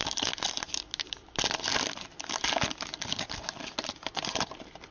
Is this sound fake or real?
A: real